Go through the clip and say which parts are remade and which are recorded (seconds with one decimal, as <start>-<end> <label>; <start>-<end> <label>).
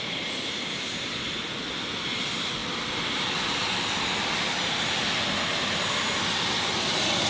0.0-7.3 recorded